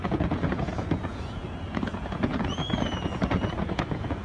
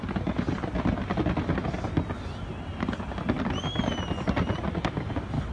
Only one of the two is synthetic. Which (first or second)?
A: first